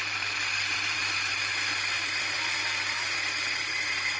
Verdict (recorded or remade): remade